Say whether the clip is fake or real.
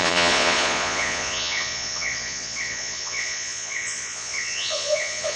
fake